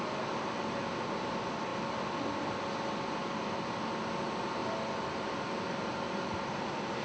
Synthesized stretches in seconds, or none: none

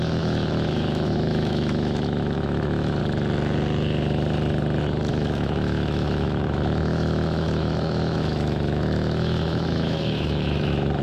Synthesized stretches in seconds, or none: 0.0-3.0 (autoencoder, DAC-VAE); 5.1-11.0

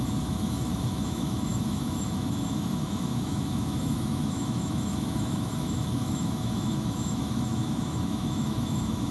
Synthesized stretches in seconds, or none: 0.0-9.1 (autoencoder, DAC-VAE)

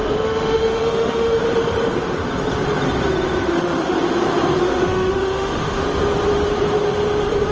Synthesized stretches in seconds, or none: 0.0-1.4 (autoencoder, DAC-VAE); 3.5-4.0; 4.6-5.8

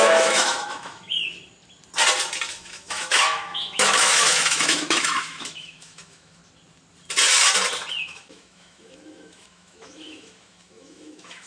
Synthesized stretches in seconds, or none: 0.0-1.2 (autoencoder, DAC-VAE); 2.5-6.4; 8.0-11.5

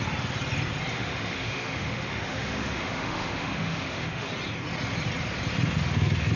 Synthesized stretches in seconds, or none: 0.9-4.3 (autoencoder, DAC-VAE)

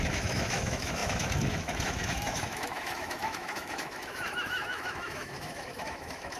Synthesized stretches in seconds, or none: 0.0-6.4 (autoencoder, DAC-VAE)